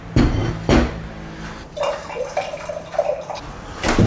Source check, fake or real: real